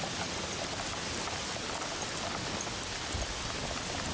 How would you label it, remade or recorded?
recorded